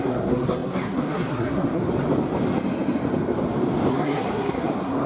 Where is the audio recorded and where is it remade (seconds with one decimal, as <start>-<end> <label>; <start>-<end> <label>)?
0.0-1.8 remade; 1.8-3.9 recorded; 3.9-5.1 remade